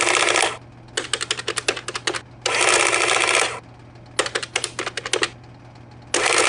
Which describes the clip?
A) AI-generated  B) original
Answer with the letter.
B